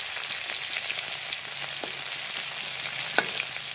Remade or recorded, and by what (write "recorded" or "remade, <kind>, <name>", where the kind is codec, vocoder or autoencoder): recorded